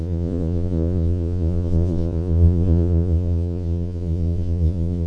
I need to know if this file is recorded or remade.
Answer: remade